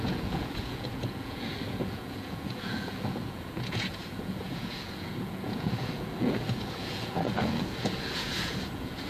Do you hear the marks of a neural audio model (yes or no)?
yes